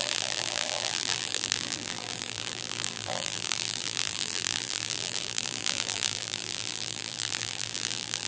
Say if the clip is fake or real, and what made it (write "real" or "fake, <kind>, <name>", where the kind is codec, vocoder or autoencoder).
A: fake, vocoder, BigVGAN v2